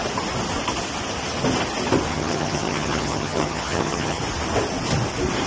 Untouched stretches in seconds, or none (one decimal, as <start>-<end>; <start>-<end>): 0.0-2.1; 4.2-5.5